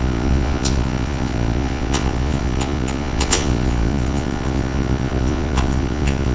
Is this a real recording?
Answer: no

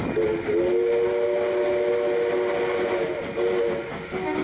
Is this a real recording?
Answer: yes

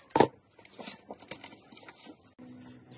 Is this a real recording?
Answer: yes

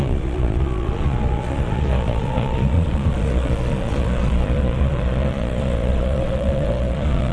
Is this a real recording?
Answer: no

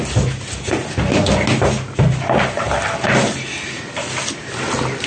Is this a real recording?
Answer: yes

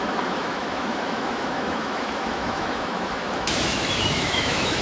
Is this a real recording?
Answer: no